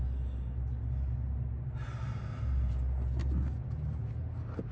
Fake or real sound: real